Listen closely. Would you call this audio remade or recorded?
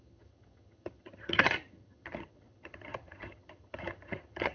remade